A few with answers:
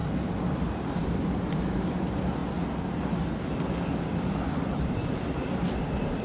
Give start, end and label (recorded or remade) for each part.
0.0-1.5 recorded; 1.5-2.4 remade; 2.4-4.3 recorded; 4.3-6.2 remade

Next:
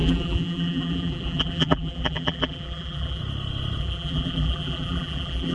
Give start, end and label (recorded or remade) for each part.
0.0-3.2 remade; 3.2-3.8 recorded; 3.8-5.5 remade